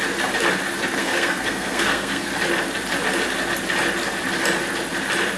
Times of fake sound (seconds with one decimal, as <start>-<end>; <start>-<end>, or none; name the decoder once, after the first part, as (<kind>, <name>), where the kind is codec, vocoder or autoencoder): 1.0-2.3 (codec, SNAC)